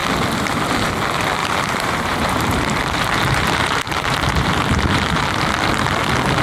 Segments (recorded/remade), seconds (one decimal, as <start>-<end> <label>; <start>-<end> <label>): 0.0-1.4 recorded; 1.4-5.2 remade; 5.2-6.4 recorded